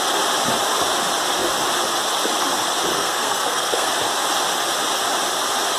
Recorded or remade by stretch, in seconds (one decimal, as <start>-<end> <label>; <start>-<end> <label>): 0.0-2.9 recorded; 2.9-3.9 remade; 3.9-5.8 recorded